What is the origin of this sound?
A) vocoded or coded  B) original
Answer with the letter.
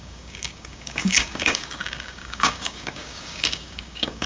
A